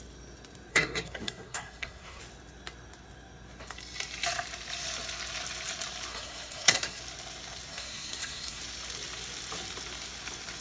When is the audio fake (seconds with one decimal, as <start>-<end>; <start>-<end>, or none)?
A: 0.7-2.2; 6.1-7.0; 7.7-8.6